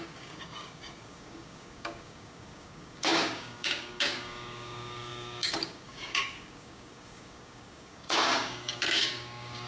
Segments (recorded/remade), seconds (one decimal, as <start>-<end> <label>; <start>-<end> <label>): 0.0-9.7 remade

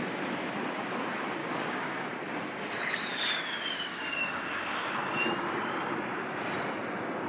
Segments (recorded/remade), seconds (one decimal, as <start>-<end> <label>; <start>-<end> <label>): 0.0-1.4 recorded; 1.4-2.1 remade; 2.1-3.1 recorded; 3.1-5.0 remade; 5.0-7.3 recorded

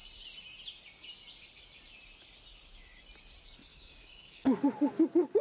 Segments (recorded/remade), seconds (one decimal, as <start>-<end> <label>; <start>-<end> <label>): 0.0-3.7 recorded; 3.7-4.6 remade; 4.6-5.4 recorded

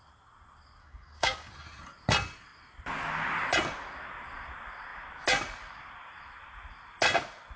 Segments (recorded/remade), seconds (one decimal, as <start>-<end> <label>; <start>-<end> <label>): 0.0-0.8 recorded; 0.8-1.5 remade; 1.5-7.6 recorded

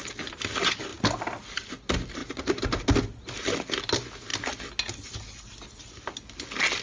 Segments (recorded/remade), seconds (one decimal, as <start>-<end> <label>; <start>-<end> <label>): 0.0-6.8 recorded

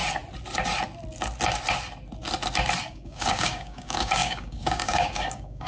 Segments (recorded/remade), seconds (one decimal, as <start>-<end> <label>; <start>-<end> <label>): 0.0-2.9 recorded; 2.9-5.7 remade

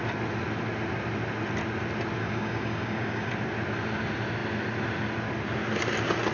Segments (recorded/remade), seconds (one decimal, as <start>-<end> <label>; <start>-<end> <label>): 0.0-2.2 recorded; 2.2-3.3 remade; 3.3-6.3 recorded